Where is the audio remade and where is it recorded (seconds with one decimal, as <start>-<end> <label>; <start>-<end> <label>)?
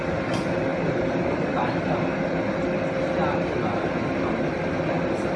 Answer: 0.0-0.7 recorded; 0.7-1.7 remade; 1.7-5.4 recorded